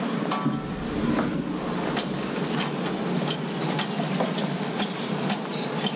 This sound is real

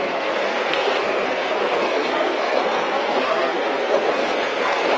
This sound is fake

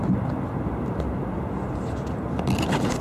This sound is real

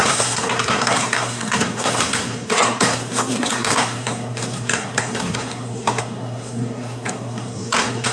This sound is fake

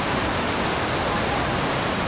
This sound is real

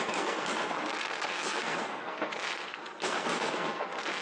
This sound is fake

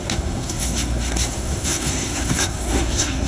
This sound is fake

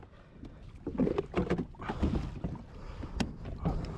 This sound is real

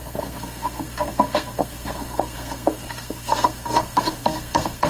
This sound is fake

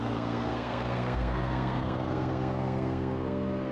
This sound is fake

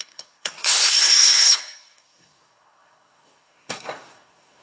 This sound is fake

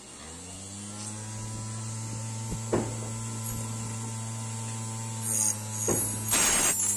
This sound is real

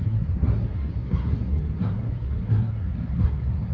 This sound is fake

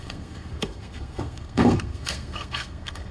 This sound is fake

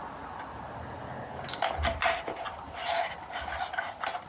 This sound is real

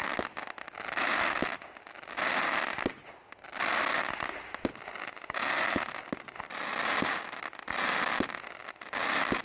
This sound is real